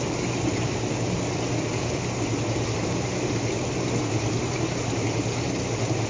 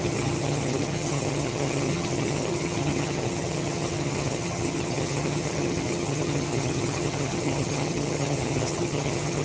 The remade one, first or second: second